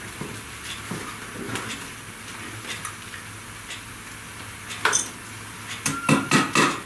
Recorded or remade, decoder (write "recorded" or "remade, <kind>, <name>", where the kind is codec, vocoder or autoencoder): recorded